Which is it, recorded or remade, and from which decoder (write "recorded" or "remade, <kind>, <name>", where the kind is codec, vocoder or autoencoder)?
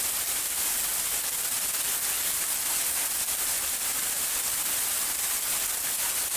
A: recorded